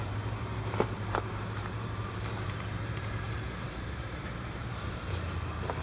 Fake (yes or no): yes